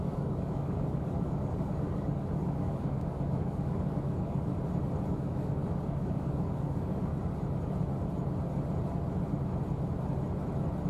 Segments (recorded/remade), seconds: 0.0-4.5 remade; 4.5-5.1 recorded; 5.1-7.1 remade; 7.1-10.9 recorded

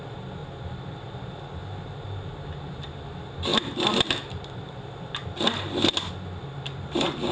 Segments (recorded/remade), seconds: 0.0-7.3 recorded

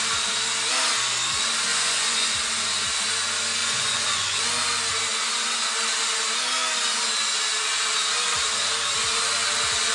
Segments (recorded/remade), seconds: 0.0-1.7 recorded; 1.7-2.3 remade; 2.3-3.6 recorded; 3.6-4.5 remade; 4.5-9.9 recorded

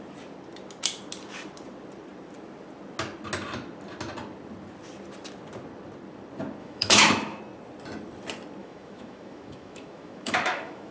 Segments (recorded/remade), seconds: 0.0-6.6 recorded; 6.6-7.4 remade; 7.4-8.6 recorded; 8.6-10.9 remade

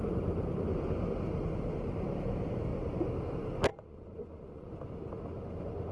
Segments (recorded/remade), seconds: 0.0-3.7 recorded; 3.7-4.7 remade; 4.7-5.9 recorded